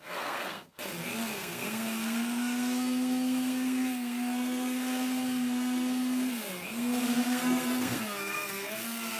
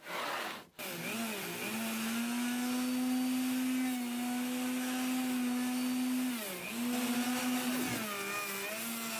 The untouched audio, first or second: second